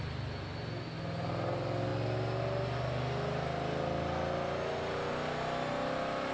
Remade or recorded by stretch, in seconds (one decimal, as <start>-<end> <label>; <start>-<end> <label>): 0.0-6.3 recorded